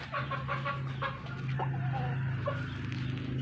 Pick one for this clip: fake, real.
real